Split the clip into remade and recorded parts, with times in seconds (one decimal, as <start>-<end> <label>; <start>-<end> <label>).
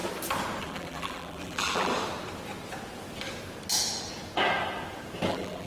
0.0-0.6 recorded; 0.6-1.9 remade; 1.9-5.3 recorded; 5.3-5.7 remade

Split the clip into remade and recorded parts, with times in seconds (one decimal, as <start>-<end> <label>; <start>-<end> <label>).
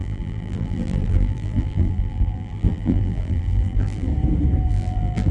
0.0-4.1 remade; 4.1-4.7 recorded; 4.7-5.3 remade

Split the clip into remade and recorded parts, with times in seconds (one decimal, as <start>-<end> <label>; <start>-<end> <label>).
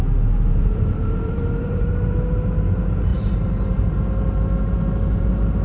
0.0-0.5 recorded; 0.5-1.9 remade; 1.9-3.1 recorded; 3.1-3.6 remade; 3.6-5.6 recorded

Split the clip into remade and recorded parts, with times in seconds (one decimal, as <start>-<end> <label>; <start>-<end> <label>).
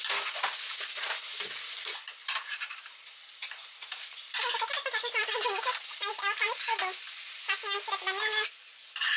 0.0-2.0 recorded; 2.0-4.4 remade; 4.4-9.2 recorded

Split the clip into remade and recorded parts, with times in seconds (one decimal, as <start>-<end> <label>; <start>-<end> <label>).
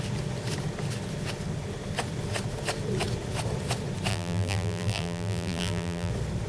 0.0-4.1 recorded; 4.1-6.1 remade; 6.1-6.5 recorded